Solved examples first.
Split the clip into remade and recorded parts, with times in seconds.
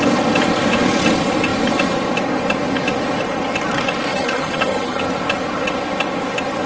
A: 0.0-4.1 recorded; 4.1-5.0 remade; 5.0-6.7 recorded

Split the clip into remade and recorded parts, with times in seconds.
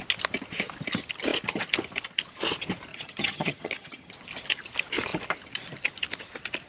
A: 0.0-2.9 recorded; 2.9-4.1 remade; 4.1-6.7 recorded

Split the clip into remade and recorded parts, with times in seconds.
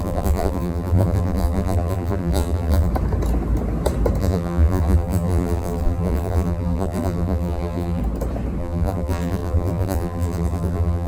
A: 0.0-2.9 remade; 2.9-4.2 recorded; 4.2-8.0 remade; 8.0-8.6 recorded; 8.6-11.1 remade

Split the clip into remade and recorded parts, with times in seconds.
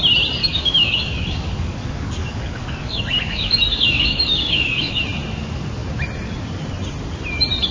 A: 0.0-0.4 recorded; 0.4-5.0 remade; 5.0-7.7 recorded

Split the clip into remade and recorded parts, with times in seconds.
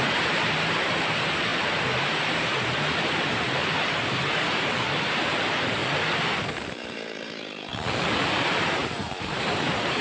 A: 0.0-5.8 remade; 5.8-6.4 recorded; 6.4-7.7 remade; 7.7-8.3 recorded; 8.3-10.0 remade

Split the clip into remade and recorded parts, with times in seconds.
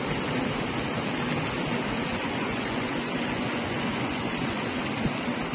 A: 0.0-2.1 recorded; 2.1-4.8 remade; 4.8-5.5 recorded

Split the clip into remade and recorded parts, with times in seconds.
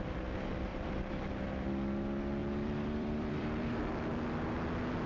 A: 0.0-0.7 recorded; 0.7-1.7 remade; 1.7-2.4 recorded; 2.4-3.8 remade; 3.8-5.1 recorded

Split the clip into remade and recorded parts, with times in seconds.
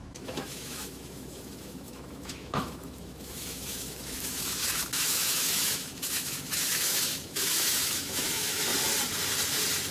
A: 0.0-8.7 remade; 8.7-9.9 recorded